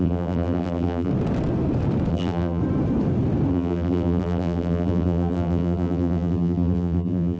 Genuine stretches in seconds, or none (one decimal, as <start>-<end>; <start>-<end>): 1.1-2.1; 2.6-3.5